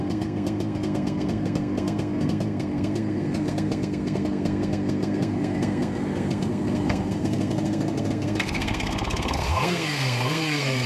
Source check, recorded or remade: remade